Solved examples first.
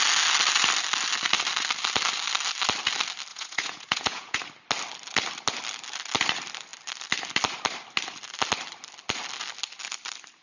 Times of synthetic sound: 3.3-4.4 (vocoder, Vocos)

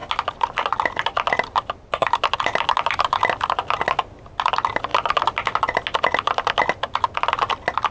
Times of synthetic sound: none

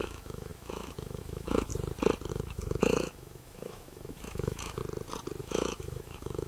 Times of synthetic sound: 0.0-1.7 (autoencoder, DAC-VAE); 2.3-4.8; 5.4-6.5

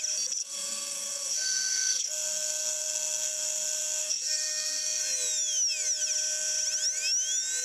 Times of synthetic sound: 0.4-5.0 (codec, SNAC)

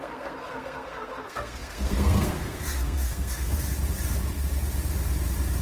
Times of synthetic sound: 0.0-3.7 (codec, SNAC)

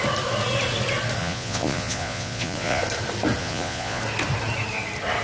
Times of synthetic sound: 1.2-2.8 (vocoder, Vocos); 3.4-4.0